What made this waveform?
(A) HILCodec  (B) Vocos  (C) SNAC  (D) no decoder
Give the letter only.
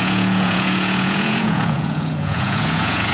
B